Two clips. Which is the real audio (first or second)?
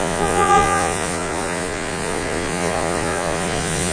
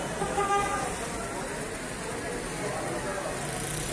second